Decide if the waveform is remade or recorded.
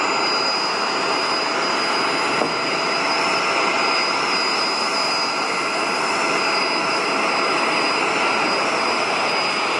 recorded